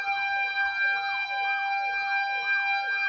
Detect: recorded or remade recorded